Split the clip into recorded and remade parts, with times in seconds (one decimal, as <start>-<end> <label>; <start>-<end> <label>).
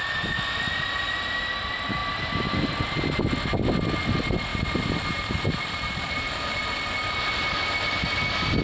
0.0-4.5 recorded; 4.5-6.6 remade; 6.6-8.6 recorded